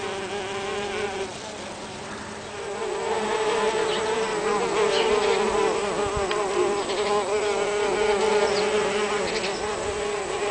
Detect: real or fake real